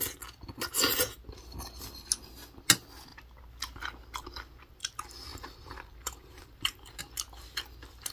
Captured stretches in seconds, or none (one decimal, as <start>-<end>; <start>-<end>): 0.0-5.3; 7.0-8.1